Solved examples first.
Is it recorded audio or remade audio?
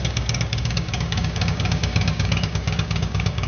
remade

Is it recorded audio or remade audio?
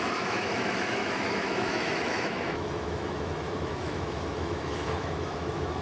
remade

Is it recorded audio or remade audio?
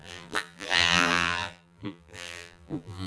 remade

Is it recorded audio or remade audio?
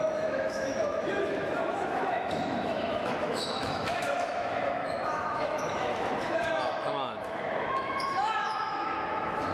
remade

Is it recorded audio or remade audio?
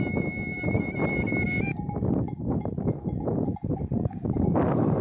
recorded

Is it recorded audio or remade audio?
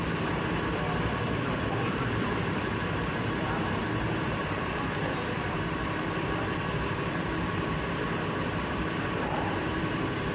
remade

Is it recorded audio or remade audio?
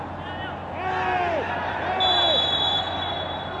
recorded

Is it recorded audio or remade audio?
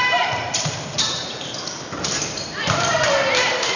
remade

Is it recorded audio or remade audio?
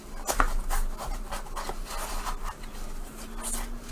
recorded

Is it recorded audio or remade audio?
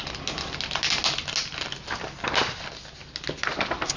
recorded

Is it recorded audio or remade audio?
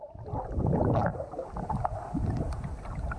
recorded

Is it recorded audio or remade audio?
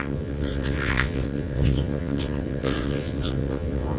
remade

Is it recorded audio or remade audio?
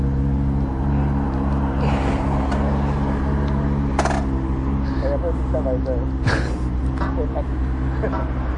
recorded